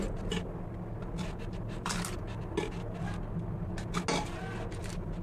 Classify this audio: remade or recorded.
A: recorded